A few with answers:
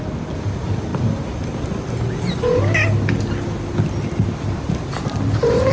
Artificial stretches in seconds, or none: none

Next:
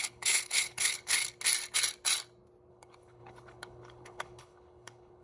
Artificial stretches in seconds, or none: 0.0-1.2 (codec, HILCodec); 2.7-5.2

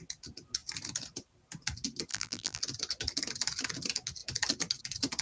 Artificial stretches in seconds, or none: 2.1-2.6 (vocoder, BigVGAN v2)